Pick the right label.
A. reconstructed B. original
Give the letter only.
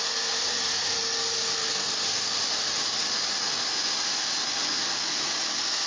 B